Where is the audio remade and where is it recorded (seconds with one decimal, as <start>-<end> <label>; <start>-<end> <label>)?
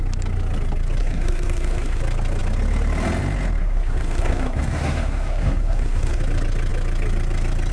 0.0-1.0 recorded; 1.0-2.0 remade; 2.0-3.6 recorded; 3.6-6.2 remade; 6.2-7.7 recorded